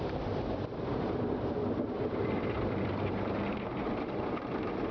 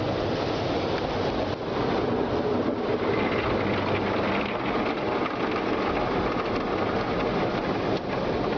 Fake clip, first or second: first